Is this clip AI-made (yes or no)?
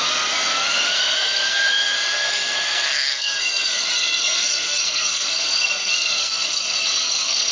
yes